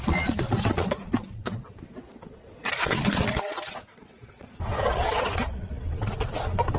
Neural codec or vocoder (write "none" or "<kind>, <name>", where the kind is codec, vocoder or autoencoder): vocoder, Vocos